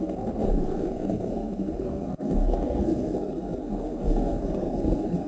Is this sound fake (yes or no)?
yes